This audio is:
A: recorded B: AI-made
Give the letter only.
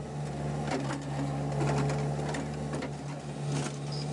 A